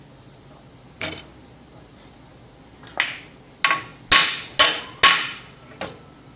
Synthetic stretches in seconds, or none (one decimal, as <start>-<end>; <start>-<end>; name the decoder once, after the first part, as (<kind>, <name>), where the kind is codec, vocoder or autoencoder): none